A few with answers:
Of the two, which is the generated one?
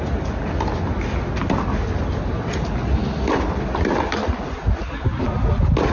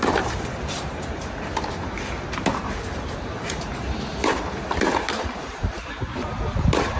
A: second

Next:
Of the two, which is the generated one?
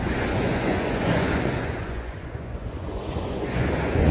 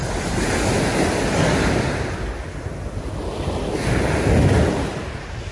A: first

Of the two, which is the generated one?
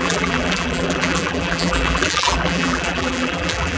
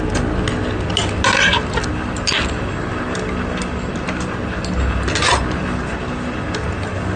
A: first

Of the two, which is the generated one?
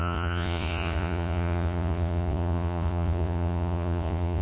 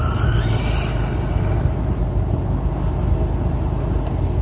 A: first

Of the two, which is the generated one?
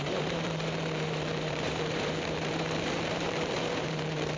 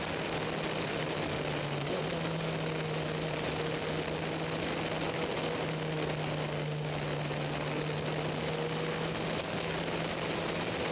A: first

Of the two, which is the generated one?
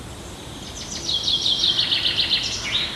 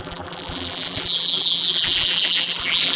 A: second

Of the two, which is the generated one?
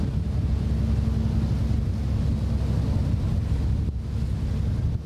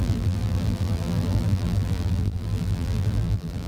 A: second